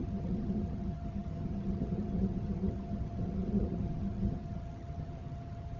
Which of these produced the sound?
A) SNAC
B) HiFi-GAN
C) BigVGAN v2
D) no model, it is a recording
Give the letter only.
B